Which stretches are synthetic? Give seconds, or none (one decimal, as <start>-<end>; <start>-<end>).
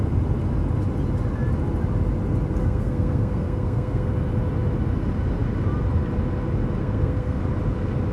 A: 2.6-4.1; 6.8-7.4